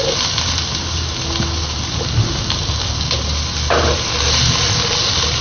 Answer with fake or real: real